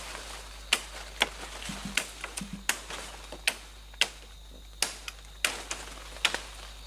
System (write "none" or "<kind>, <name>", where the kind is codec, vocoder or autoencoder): none